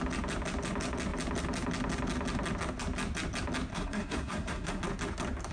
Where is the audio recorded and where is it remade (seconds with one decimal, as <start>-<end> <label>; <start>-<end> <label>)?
0.0-3.7 recorded; 3.7-4.8 remade; 4.8-5.5 recorded